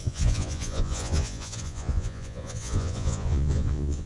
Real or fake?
fake